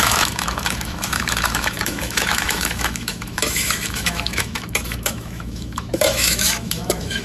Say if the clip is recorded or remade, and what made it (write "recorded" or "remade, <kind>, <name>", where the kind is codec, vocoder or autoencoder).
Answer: remade, autoencoder, DAC-VAE